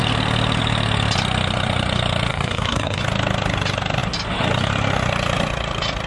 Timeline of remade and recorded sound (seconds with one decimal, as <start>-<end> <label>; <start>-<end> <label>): 0.0-2.3 recorded; 2.3-3.0 remade; 3.0-6.1 recorded